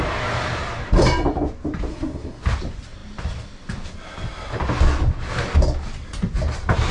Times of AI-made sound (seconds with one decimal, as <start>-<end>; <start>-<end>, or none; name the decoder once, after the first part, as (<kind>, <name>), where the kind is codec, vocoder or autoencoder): 1.9-2.4 (codec, SNAC)